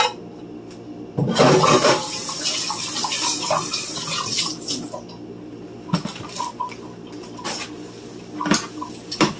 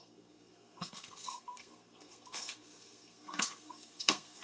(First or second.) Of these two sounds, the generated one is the second